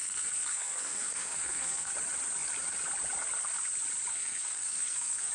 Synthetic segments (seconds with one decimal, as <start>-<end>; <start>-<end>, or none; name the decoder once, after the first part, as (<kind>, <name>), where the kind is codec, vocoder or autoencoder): 0.0-1.9 (codec, SNAC); 4.1-5.3